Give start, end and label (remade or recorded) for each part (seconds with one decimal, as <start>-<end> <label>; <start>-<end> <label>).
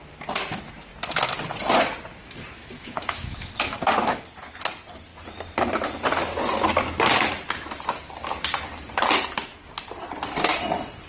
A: 0.0-2.2 recorded; 2.2-3.5 remade; 3.5-11.1 recorded